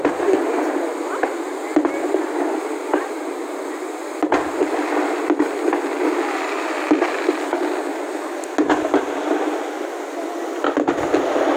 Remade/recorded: recorded